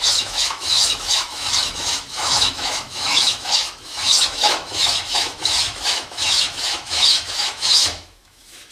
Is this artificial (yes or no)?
yes